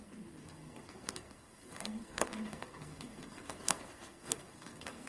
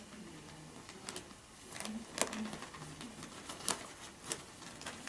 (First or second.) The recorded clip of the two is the second